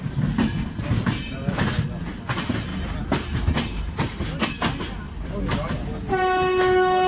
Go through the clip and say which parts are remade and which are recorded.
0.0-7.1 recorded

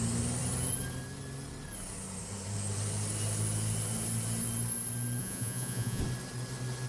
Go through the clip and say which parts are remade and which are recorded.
0.0-5.2 recorded; 5.2-6.0 remade; 6.0-6.9 recorded

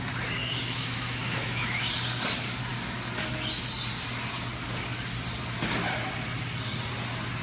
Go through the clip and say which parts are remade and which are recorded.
0.0-0.4 recorded; 0.4-1.9 remade; 1.9-7.4 recorded